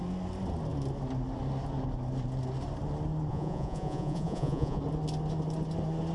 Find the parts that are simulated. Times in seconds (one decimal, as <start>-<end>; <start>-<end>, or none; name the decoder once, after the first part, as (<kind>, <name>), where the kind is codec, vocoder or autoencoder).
3.3-4.8 (vocoder, Vocos)